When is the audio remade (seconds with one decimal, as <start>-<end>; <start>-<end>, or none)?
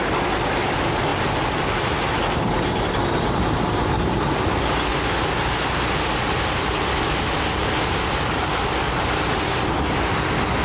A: none